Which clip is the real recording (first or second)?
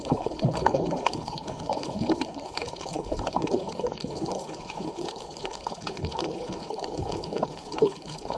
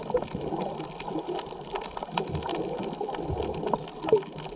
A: second